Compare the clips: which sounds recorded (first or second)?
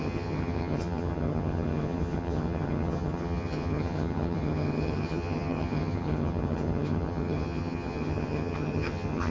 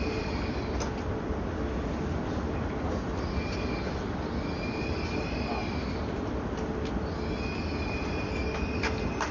second